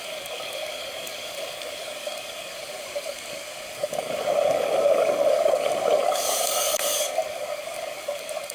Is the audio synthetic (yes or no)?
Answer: yes